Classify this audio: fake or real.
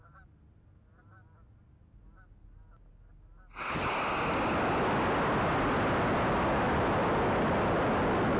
real